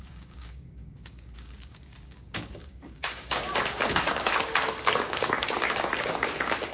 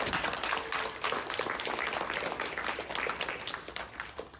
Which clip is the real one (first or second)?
second